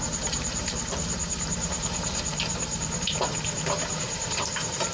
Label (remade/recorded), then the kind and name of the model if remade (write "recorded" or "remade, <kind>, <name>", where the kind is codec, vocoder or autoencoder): remade, vocoder, BigVGAN v2